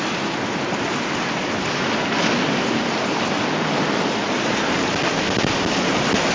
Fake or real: real